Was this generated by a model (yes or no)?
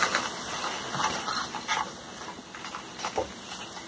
no